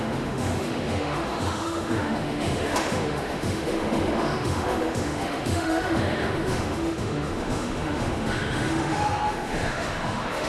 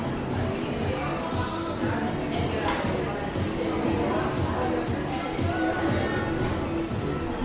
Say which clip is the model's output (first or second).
first